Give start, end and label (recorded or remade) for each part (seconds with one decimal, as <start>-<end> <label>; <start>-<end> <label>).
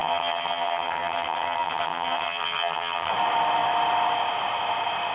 0.0-3.1 remade; 3.1-5.1 recorded